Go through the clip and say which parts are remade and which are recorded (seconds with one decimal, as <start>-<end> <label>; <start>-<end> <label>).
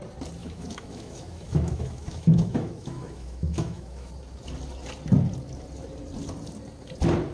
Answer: 0.0-0.4 recorded; 0.4-4.1 remade; 4.1-7.3 recorded